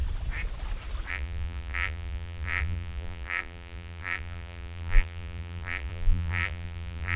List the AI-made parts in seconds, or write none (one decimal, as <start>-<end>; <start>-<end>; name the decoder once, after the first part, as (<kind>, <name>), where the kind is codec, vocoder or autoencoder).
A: 1.1-7.2 (vocoder, BigVGAN v2)